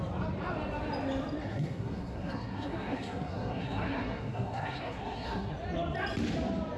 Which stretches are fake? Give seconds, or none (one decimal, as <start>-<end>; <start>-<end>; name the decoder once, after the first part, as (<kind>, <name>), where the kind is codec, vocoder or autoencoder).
1.4-5.5 (codec, SNAC)